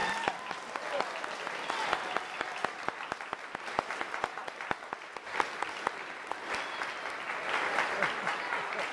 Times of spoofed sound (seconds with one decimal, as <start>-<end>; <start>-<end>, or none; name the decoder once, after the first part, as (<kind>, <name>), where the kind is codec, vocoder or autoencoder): 3.2-4.4 (vocoder, BigVGAN v2); 7.3-8.3